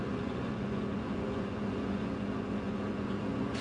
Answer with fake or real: fake